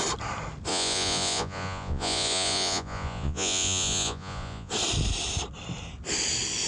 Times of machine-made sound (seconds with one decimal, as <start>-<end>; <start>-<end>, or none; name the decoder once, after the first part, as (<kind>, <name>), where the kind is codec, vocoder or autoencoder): 0.7-4.7 (vocoder, Vocos)